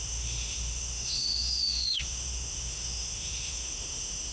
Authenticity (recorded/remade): remade